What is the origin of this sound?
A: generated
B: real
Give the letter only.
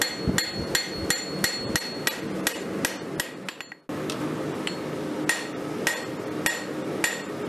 B